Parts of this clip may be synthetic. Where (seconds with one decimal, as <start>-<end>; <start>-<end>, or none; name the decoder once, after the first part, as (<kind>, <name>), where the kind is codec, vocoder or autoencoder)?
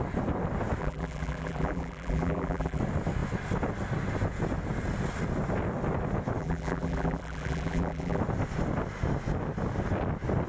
0.8-2.8 (vocoder, BigVGAN v2); 6.4-8.2